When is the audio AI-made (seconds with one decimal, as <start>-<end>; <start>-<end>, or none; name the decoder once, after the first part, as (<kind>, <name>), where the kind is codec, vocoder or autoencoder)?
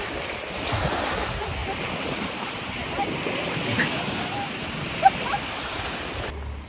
none